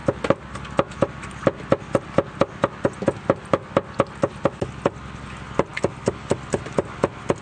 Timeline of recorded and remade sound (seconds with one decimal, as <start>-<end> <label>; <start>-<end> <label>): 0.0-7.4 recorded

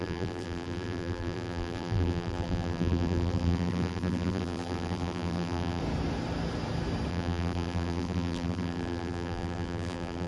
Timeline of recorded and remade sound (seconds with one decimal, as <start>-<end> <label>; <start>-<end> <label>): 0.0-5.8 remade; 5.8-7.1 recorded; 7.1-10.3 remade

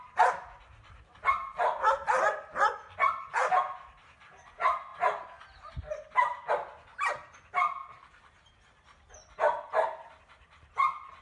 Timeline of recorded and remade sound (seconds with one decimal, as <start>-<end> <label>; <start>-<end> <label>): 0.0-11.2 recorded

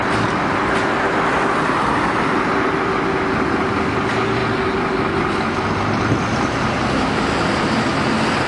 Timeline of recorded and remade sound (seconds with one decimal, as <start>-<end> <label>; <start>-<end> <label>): 0.0-8.5 recorded

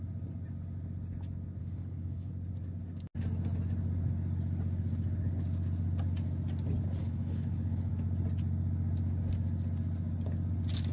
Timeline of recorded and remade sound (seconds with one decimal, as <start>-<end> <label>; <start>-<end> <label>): 0.0-1.6 recorded; 1.6-2.3 remade; 2.3-7.0 recorded; 7.0-7.9 remade; 7.9-10.9 recorded

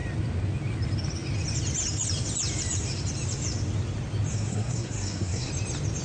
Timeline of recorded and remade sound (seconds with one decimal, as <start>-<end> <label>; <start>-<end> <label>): 0.0-4.3 recorded; 4.3-5.5 remade; 5.5-6.0 recorded